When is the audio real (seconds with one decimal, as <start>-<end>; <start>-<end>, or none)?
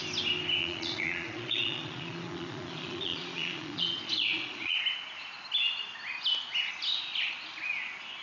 0.0-0.6; 4.8-8.2